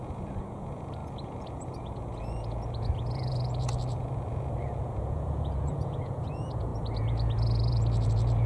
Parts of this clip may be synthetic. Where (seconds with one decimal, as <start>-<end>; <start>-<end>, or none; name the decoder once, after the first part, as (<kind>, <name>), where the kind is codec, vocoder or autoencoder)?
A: 0.0-8.5 (vocoder, Vocos)